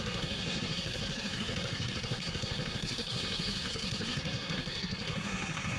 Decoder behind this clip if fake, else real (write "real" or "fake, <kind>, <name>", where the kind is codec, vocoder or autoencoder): fake, codec, SNAC